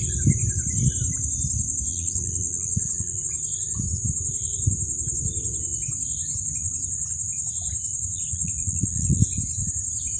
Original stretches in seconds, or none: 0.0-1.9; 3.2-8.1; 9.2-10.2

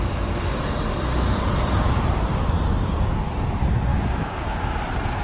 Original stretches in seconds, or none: 0.0-3.9; 4.8-5.2

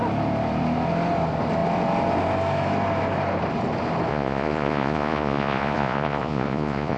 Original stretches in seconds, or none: 0.0-4.1

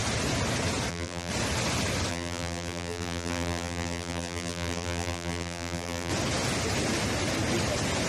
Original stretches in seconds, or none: 0.0-0.9; 1.3-2.1; 6.1-8.1

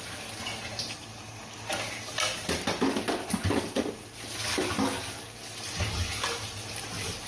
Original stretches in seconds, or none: 0.0-7.3

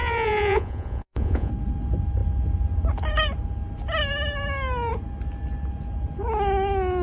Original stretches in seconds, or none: 1.5-7.0